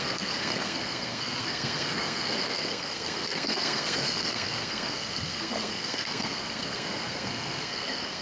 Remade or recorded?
remade